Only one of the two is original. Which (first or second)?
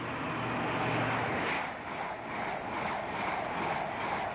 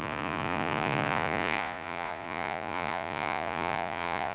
first